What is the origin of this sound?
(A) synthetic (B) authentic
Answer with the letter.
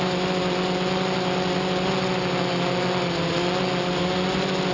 B